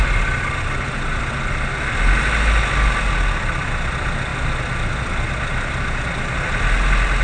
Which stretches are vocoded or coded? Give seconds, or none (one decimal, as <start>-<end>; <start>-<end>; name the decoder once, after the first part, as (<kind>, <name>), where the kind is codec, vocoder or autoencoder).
none